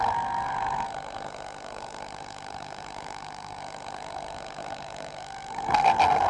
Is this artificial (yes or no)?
yes